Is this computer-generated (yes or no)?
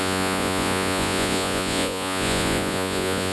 yes